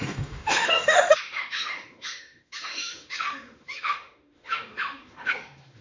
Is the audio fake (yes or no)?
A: yes